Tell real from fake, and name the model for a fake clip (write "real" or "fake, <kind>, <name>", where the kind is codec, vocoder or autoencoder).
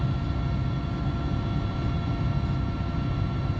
real